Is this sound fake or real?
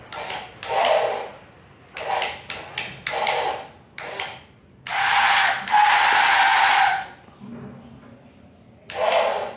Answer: real